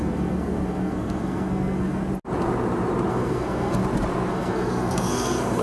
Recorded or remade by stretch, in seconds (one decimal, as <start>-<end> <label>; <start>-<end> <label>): 0.0-2.0 remade; 2.0-3.1 recorded; 3.1-3.8 remade; 3.8-4.3 recorded; 4.3-5.6 remade